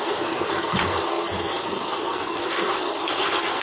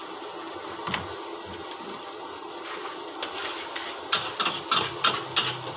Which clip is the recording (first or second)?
second